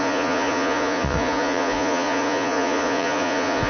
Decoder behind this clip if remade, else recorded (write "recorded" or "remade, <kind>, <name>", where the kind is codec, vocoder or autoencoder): remade, vocoder, Vocos